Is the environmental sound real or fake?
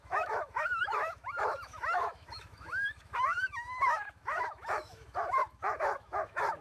fake